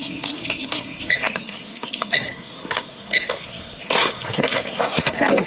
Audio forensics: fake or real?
fake